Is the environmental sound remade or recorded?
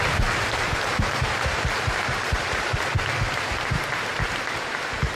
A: remade